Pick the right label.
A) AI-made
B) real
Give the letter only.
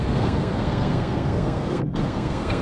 A